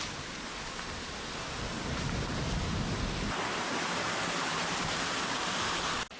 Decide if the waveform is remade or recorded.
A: recorded